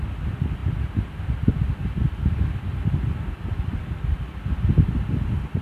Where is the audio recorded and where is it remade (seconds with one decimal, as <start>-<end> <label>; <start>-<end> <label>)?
0.0-5.6 recorded